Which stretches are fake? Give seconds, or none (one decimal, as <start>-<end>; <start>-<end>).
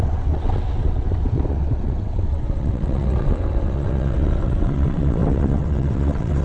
0.0-6.4